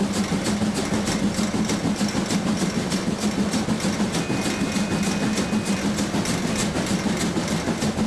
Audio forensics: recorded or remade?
recorded